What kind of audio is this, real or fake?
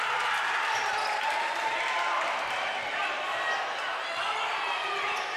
real